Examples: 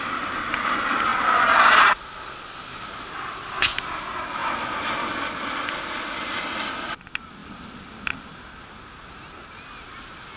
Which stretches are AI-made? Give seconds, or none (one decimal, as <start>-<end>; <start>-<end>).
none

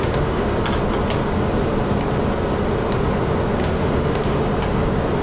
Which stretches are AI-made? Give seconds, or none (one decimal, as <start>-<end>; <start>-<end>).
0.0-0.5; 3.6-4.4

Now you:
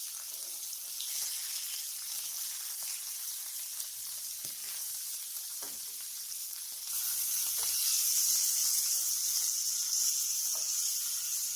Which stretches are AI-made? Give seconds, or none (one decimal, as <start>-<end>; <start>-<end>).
none